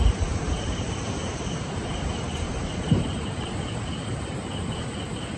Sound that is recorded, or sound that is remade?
remade